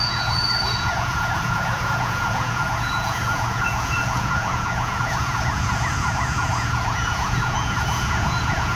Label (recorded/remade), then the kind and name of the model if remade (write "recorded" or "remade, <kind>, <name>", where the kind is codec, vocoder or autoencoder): remade, vocoder, Vocos